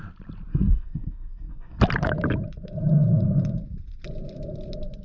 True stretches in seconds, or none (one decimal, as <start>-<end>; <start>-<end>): 0.0-0.5; 1.8-5.0